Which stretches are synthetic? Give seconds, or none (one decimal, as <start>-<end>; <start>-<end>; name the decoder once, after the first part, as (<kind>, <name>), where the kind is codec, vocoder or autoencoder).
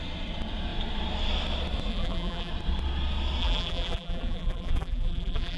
1.9-2.5 (vocoder, BigVGAN v2); 3.4-5.6